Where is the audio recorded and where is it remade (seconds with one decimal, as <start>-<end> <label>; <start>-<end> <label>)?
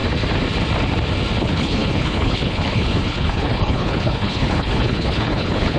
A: 0.0-1.4 recorded; 1.4-5.8 remade